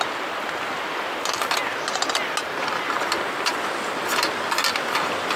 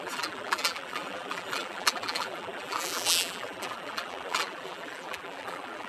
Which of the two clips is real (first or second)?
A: first